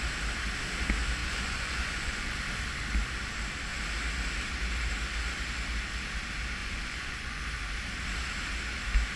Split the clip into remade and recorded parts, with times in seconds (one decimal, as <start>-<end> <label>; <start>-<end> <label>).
0.0-1.2 recorded; 1.2-2.4 remade; 2.4-6.6 recorded; 6.6-7.4 remade; 7.4-9.2 recorded